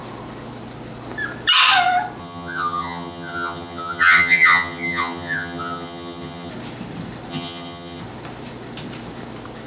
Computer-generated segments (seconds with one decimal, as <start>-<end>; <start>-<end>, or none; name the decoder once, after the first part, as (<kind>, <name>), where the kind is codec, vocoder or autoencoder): 2.2-6.5 (vocoder, HiFi-GAN); 7.3-8.0